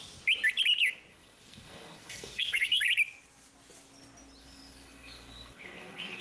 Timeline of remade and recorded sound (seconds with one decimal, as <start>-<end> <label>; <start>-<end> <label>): 0.0-1.1 recorded; 1.1-2.8 remade; 2.8-4.4 recorded; 4.4-6.2 remade